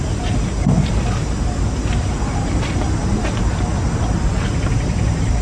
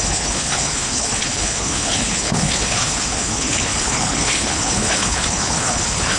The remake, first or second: second